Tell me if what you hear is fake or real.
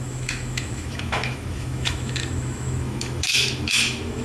fake